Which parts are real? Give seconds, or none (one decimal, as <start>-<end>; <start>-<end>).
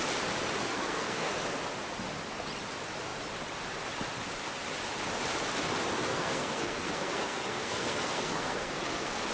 0.0-0.6; 1.3-6.1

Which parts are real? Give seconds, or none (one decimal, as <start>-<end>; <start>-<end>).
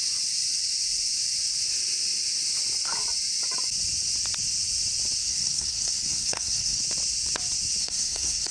0.0-5.2; 6.8-7.8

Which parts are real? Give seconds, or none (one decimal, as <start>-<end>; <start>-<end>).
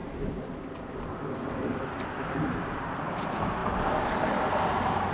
0.0-2.9